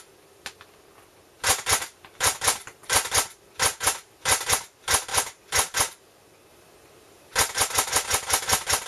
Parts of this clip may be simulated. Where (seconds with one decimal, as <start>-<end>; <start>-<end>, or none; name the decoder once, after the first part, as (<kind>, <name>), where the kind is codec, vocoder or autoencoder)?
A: none